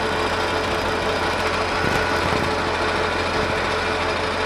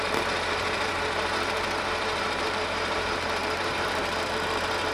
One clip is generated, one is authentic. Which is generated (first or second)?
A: second